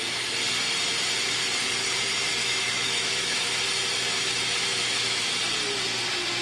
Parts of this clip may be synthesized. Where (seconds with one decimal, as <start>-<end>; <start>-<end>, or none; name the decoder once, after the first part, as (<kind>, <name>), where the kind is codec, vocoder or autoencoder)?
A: 2.4-3.6 (autoencoder, DAC-VAE); 4.6-5.4